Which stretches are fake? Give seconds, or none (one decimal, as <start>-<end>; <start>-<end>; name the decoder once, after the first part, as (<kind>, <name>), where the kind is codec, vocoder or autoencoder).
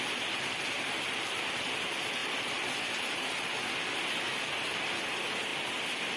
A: none